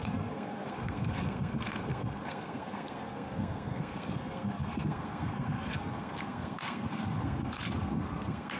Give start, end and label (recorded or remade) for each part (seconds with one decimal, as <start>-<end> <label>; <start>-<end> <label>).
0.0-8.6 remade